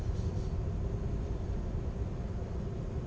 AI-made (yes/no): no